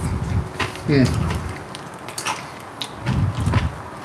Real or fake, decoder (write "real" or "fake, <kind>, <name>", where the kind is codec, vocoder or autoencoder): real